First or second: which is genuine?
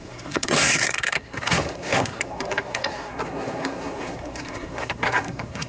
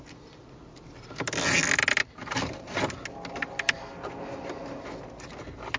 second